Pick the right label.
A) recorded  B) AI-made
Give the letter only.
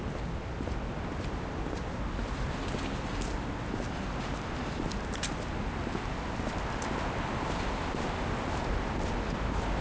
A